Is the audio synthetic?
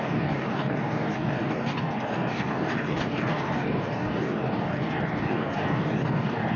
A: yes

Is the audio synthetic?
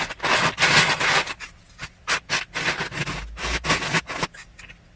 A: no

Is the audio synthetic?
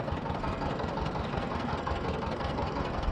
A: yes